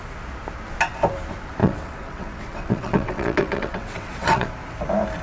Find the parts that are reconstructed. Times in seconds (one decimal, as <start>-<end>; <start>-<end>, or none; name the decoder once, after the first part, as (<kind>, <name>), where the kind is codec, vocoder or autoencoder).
1.6-4.5 (vocoder, WaveNeXt)

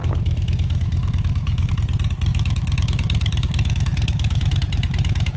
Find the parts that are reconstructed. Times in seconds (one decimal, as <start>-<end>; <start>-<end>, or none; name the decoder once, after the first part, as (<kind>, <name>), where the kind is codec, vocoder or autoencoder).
0.0-1.7 (autoencoder, DAC-VAE); 2.3-5.4

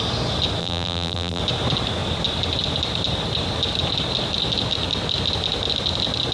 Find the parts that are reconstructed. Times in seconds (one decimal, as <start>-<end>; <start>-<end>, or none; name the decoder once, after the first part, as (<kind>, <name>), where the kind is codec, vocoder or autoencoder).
0.6-1.4 (vocoder, BigVGAN v2)